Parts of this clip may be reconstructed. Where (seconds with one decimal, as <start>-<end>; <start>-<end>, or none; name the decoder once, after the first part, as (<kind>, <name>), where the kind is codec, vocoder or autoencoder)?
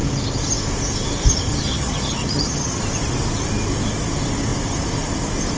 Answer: 1.5-2.8 (vocoder, HiFi-GAN)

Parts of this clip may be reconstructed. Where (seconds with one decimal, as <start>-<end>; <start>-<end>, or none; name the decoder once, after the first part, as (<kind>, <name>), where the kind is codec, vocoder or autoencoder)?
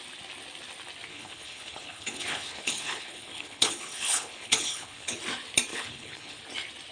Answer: 1.1-5.2 (codec, HILCodec); 5.7-6.4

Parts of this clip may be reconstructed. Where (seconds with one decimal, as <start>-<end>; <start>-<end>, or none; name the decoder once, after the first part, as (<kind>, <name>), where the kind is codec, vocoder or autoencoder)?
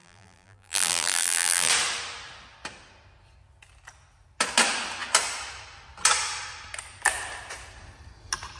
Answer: 0.0-1.7 (vocoder, BigVGAN v2)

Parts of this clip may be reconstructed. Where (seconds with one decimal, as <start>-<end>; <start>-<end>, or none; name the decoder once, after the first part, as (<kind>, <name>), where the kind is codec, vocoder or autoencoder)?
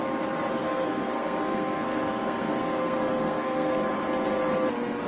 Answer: 0.6-3.7 (codec, SNAC)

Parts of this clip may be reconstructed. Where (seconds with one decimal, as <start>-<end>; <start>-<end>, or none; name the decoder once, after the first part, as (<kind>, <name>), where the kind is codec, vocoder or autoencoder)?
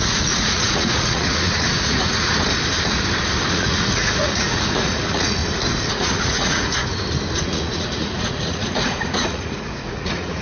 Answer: 0.0-2.3 (vocoder, Vocos); 3.5-5.4; 5.9-6.8; 7.4-10.4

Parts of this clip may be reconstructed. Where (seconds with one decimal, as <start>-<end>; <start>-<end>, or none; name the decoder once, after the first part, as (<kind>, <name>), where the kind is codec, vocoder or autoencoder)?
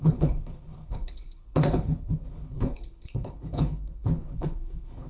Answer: 0.0-5.1 (codec, HILCodec)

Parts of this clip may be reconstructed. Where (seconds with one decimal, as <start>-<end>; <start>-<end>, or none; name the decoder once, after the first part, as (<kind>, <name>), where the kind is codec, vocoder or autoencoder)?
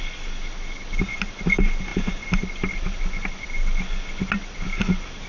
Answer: none